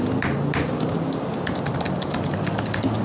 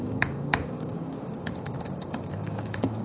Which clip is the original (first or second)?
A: first